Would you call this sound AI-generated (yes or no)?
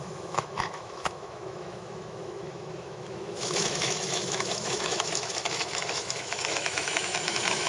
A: yes